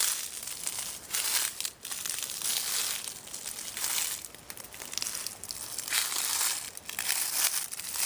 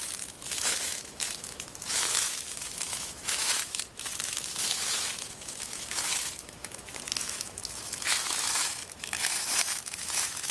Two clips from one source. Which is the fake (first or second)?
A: second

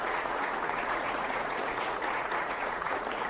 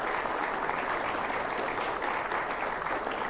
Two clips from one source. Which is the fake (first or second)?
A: first